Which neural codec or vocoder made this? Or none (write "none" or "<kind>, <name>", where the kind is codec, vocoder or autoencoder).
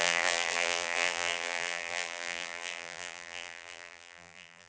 vocoder, BigVGAN v2